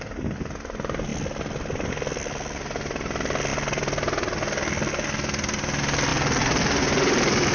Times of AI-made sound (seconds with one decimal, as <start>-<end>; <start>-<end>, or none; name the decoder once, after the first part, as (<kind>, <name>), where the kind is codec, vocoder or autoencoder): none